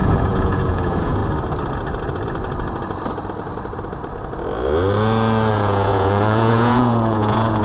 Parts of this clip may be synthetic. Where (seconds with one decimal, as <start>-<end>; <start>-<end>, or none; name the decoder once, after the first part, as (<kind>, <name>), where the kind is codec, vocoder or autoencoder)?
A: 0.0-1.2 (vocoder, Vocos); 5.5-7.6